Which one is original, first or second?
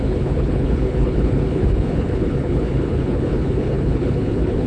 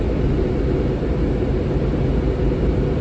second